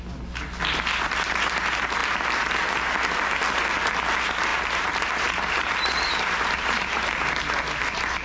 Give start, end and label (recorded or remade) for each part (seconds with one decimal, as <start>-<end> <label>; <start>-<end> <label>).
0.0-4.5 recorded; 4.5-7.1 remade; 7.1-8.2 recorded